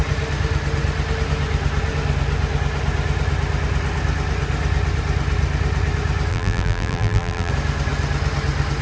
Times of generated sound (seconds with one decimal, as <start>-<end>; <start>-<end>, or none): 6.3-7.5